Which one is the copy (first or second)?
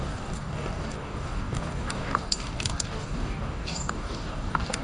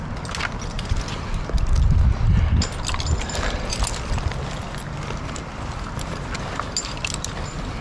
first